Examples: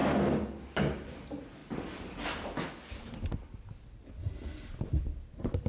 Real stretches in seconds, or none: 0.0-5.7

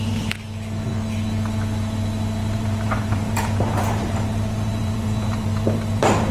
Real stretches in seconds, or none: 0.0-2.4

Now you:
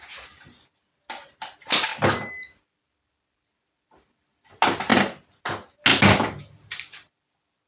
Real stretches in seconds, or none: 0.0-4.9; 5.4-7.7

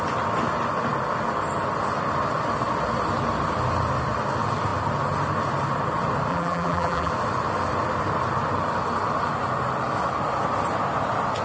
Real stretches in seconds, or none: 0.0-6.3; 7.1-11.4

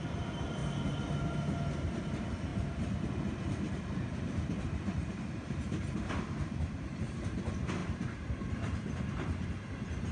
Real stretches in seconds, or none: 0.6-2.0